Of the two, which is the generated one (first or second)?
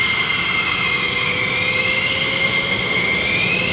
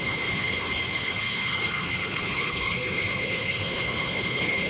second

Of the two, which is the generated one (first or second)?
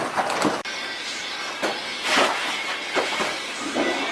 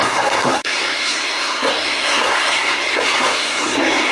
second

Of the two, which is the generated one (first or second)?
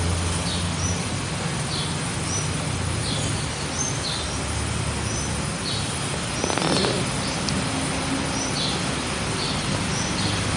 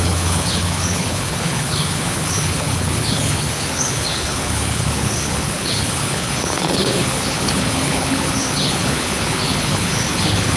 second